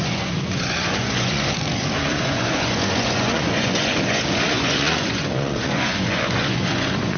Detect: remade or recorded remade